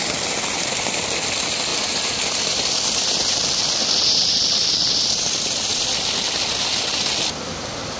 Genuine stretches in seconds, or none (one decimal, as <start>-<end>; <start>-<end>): 0.0-1.7; 6.1-8.0